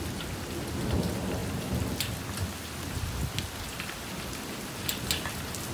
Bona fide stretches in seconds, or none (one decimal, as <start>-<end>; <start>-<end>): 0.0-5.7